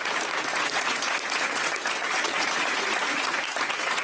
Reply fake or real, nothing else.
fake